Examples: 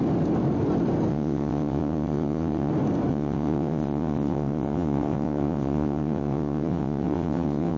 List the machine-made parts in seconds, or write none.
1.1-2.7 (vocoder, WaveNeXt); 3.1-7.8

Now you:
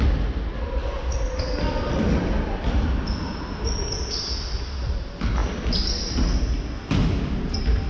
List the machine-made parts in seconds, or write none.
none

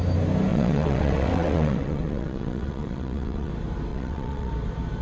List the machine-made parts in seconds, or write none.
0.5-3.5 (vocoder, WaveNeXt); 3.9-4.5

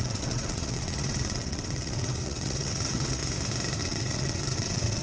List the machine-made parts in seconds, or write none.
0.0-3.2 (vocoder, WaveNeXt); 3.8-5.0

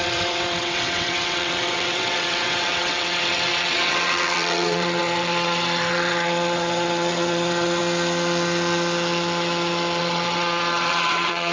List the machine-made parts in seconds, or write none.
0.0-7.8 (vocoder, WaveNeXt); 10.0-11.5

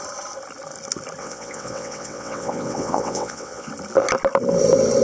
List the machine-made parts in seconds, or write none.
1.2-3.7 (vocoder, WaveNeXt)